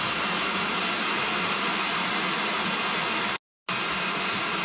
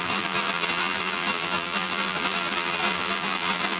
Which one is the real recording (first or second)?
first